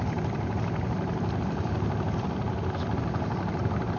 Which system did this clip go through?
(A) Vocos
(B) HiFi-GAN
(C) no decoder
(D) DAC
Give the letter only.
C